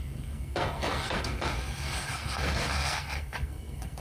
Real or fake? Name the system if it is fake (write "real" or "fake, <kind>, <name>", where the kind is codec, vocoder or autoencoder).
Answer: fake, codec, SNAC